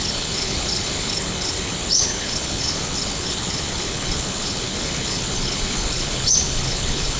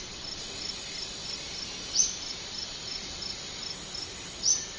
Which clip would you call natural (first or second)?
second